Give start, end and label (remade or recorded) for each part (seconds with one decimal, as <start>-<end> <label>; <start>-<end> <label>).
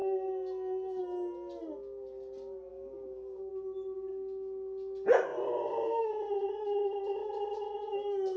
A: 0.0-2.7 recorded; 2.7-3.5 remade; 3.5-8.4 recorded